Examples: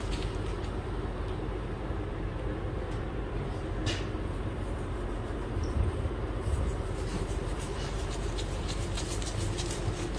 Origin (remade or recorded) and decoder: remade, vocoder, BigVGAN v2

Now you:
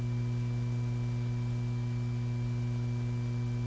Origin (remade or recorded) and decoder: recorded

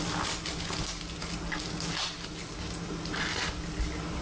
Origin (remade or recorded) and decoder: recorded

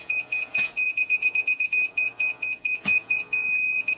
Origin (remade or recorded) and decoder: remade, vocoder, Vocos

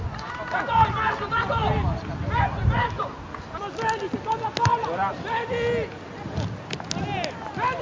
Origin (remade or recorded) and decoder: recorded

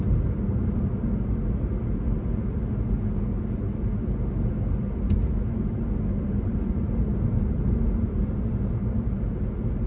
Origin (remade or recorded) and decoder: recorded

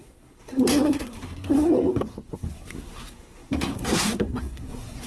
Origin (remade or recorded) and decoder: remade, codec, SNAC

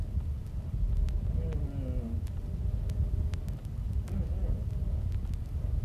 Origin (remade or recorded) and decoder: recorded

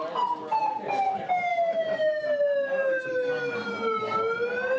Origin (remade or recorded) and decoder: recorded